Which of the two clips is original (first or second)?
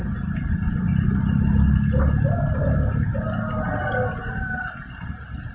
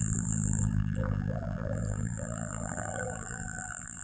first